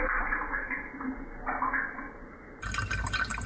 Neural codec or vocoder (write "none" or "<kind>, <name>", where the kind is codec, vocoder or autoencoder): none